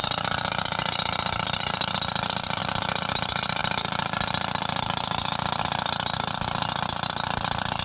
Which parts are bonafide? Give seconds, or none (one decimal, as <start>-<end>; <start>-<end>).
0.0-7.8